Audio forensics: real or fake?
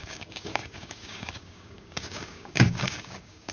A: fake